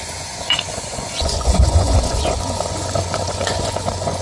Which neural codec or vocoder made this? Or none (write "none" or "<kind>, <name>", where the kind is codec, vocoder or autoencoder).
vocoder, Vocos